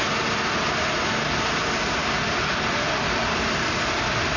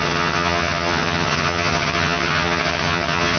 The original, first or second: first